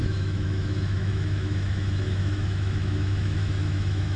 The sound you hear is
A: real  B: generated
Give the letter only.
B